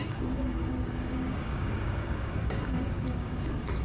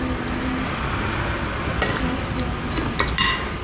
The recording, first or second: second